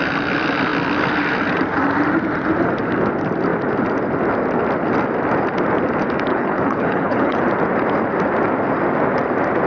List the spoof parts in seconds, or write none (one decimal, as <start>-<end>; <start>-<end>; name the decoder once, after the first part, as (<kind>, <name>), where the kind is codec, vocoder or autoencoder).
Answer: 6.3-7.4 (codec, HILCodec)